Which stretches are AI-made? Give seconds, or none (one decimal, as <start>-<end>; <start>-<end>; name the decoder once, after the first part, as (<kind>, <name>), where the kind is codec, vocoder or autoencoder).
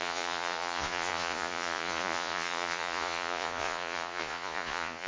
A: 0.0-5.1 (vocoder, Vocos)